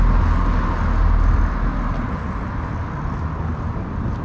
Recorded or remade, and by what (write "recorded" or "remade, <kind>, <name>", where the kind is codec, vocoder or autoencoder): recorded